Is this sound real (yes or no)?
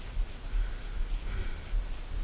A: yes